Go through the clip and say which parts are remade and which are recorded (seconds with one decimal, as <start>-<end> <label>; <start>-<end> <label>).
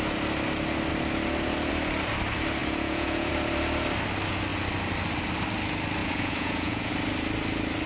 0.0-2.6 recorded; 2.6-3.3 remade; 3.3-6.0 recorded; 6.0-6.9 remade; 6.9-7.9 recorded